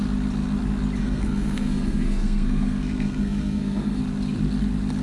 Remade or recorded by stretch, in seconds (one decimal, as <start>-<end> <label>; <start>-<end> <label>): 0.0-1.0 recorded; 1.0-4.0 remade; 4.0-5.0 recorded